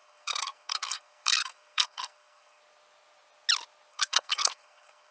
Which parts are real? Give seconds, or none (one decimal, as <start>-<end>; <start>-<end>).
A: 2.6-3.9